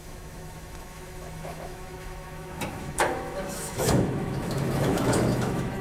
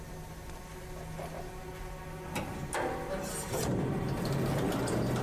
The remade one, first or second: first